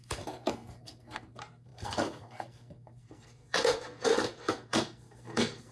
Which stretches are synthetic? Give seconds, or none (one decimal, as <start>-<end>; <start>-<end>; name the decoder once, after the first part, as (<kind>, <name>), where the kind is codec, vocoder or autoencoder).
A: 0.0-5.7 (codec, SNAC)